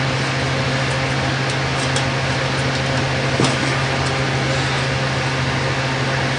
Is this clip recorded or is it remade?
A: recorded